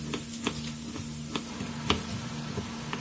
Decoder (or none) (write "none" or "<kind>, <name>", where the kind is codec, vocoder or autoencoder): none